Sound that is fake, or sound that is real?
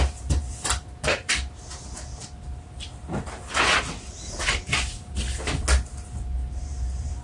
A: real